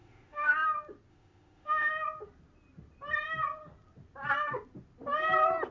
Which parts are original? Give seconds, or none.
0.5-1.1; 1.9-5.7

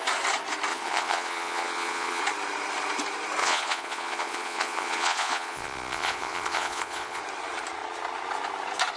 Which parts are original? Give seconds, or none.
0.0-0.7; 2.2-3.4; 7.2-9.0

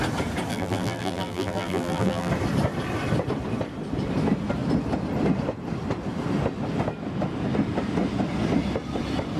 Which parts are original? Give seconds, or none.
0.0-0.5; 2.3-9.4

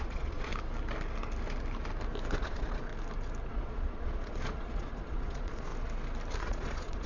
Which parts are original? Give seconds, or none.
0.5-2.4; 2.9-3.5; 5.7-6.4

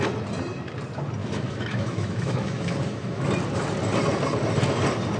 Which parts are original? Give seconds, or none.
0.0-1.2; 3.3-5.2

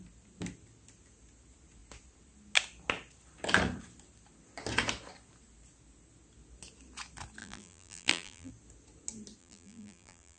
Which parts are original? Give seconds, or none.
0.0-7.4; 8.5-9.4